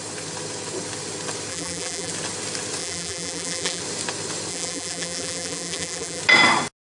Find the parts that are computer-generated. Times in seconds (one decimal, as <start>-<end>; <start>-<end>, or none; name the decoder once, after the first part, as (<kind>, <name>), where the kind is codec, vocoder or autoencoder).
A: 1.5-2.1 (vocoder, BigVGAN v2); 2.8-3.8; 4.5-6.2